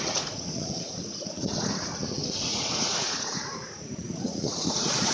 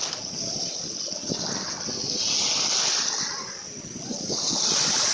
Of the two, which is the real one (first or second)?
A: second